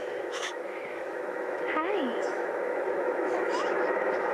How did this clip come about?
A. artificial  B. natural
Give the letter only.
A